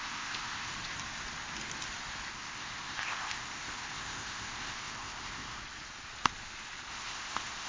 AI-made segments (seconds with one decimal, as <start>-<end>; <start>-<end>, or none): 0.0-0.7; 2.3-5.6; 6.9-7.7